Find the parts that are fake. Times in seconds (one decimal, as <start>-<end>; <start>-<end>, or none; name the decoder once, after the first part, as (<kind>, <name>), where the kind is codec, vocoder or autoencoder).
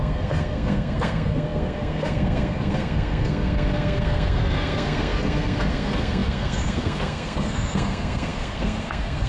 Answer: 0.0-9.3 (codec, SNAC)